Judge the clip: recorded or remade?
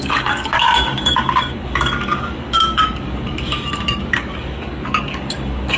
remade